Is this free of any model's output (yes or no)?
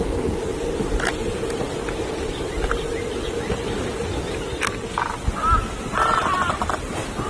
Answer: yes